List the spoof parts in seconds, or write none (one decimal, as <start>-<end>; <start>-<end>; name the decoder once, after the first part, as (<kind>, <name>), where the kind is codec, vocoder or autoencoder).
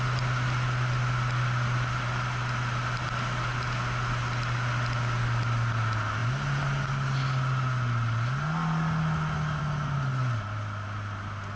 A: none